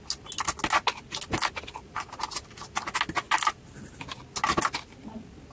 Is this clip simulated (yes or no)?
no